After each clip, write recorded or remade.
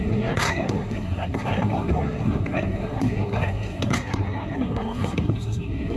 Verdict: remade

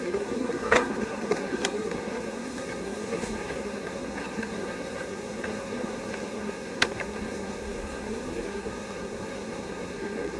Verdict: remade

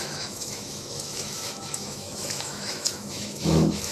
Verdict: remade